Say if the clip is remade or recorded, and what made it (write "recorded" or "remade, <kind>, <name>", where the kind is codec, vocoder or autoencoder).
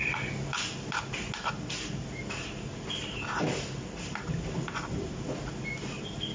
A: recorded